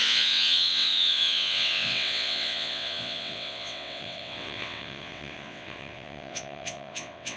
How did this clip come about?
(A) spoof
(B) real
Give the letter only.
A